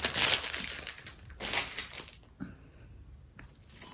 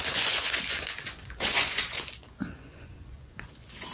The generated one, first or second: second